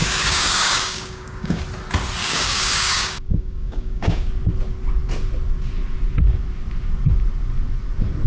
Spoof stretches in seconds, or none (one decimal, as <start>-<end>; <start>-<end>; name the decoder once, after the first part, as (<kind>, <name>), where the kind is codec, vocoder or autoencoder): 0.0-1.6 (codec, DAC); 2.2-4.3